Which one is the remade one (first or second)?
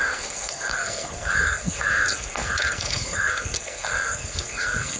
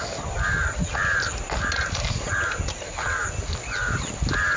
first